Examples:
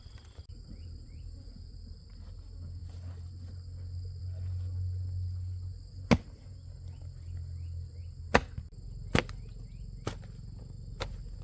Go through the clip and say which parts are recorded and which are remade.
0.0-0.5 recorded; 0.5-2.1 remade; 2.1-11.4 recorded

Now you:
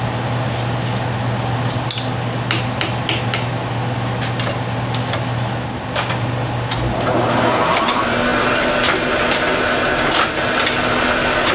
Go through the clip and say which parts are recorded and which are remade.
0.0-11.5 recorded

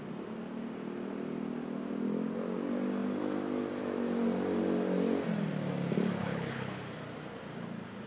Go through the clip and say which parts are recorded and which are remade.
0.0-6.2 recorded; 6.2-6.8 remade; 6.8-8.1 recorded